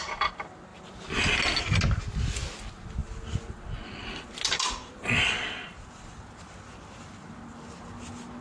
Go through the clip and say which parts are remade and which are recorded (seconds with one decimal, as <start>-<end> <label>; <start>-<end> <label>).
0.0-8.4 recorded